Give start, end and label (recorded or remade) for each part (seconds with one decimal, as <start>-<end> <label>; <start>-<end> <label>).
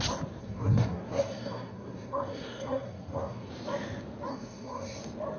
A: 0.0-0.4 recorded; 0.4-3.5 remade; 3.5-4.3 recorded; 4.3-5.0 remade; 5.0-5.4 recorded